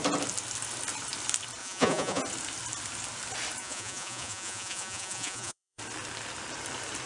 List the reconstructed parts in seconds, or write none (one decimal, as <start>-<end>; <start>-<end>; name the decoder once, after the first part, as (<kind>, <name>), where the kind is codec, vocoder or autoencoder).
1.6-2.2 (vocoder, Vocos); 3.6-5.8